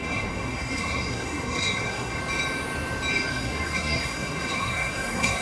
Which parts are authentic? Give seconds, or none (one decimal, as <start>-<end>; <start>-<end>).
2.2-3.3